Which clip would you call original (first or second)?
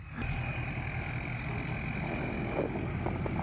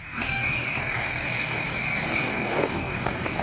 first